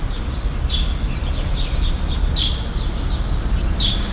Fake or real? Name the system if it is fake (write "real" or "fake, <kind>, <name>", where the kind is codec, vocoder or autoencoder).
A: real